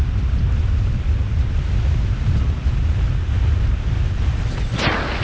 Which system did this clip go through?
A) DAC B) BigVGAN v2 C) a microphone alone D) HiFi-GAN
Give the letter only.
C